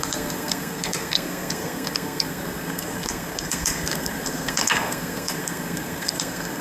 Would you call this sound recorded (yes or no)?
no